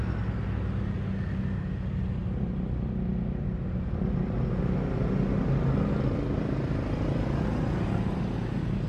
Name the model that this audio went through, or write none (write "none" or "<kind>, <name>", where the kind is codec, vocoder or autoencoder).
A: none